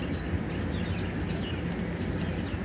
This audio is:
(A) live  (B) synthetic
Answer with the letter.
A